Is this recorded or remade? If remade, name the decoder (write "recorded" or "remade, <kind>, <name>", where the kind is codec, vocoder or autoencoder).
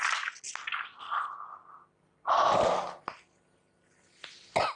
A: recorded